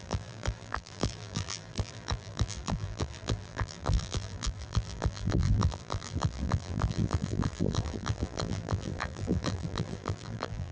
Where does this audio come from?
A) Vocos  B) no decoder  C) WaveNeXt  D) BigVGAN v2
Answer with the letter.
D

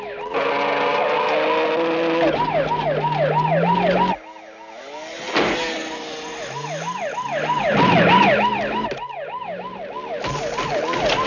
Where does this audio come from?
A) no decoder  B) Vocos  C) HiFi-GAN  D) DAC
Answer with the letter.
A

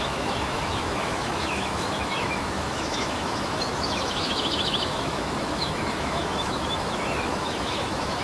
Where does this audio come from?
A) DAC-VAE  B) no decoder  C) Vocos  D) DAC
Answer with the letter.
A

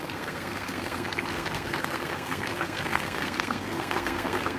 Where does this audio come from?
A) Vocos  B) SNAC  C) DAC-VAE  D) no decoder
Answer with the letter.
B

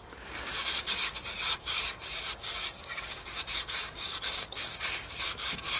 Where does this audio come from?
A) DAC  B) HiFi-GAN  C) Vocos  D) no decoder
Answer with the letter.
A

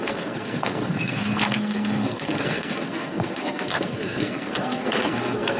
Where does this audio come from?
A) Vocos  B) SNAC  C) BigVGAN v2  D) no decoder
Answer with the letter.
B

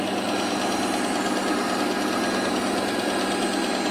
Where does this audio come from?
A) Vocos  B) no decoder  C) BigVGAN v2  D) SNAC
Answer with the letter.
B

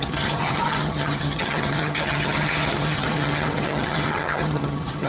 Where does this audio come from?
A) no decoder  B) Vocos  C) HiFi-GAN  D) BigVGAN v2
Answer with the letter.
C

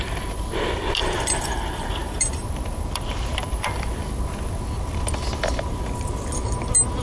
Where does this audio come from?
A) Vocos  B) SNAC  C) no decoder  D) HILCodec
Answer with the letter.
C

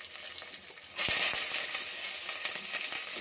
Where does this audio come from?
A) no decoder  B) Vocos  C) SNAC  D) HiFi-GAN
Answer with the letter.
A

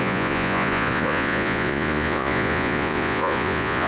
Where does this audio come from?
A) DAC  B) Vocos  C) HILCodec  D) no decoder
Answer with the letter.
B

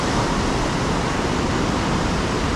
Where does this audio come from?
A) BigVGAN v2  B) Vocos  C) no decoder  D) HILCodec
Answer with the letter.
C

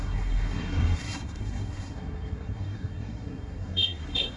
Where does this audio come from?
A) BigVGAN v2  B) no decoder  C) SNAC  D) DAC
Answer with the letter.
C